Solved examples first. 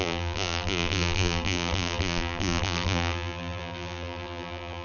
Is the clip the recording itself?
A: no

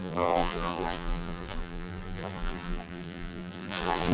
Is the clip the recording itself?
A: no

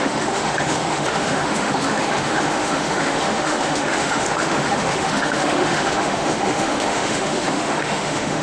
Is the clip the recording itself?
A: no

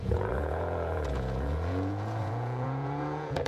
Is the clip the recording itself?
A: no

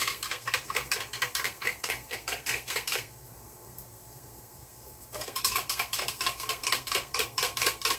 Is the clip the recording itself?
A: no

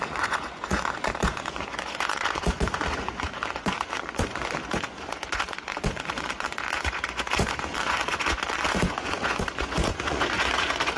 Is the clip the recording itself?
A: no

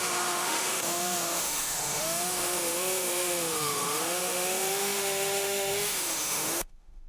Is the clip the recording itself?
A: no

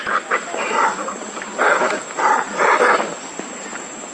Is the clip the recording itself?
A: yes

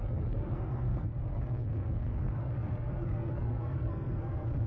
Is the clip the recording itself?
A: no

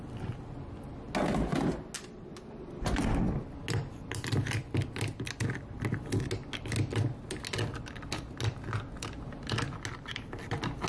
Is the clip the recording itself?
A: yes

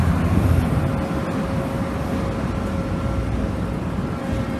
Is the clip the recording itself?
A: yes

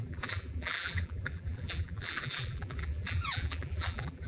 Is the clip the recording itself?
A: no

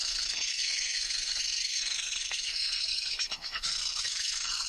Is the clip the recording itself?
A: no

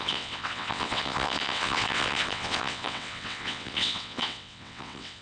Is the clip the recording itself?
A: no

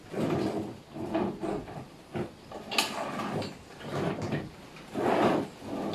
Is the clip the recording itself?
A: yes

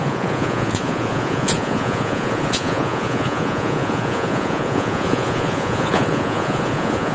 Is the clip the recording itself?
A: no